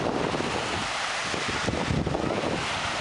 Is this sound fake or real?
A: real